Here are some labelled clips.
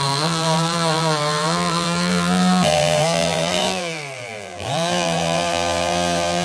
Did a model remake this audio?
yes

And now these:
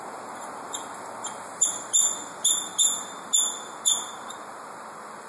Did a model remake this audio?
no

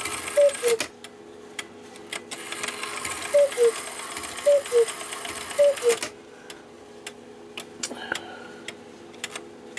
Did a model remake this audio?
no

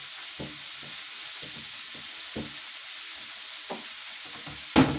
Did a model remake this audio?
no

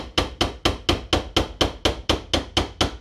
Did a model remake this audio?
no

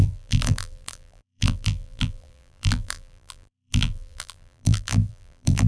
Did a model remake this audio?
yes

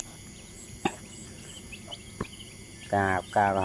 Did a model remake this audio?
no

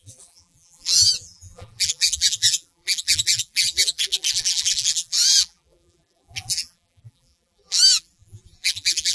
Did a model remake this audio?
yes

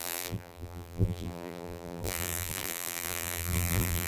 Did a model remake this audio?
yes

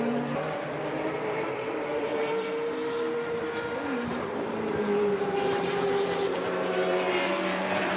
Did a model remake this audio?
yes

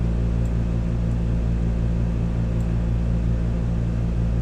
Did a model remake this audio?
no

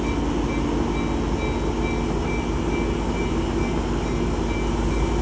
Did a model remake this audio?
no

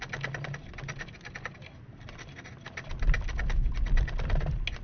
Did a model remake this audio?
no